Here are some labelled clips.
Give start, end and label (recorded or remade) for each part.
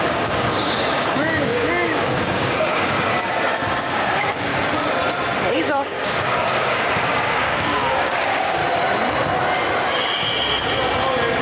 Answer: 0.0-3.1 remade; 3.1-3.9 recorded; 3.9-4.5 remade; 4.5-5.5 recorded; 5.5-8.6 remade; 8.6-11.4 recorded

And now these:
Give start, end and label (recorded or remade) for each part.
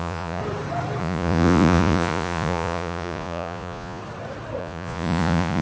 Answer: 0.0-0.4 remade; 0.4-1.0 recorded; 1.0-4.0 remade; 4.0-4.6 recorded; 4.6-5.6 remade